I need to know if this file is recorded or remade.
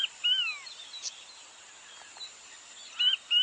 recorded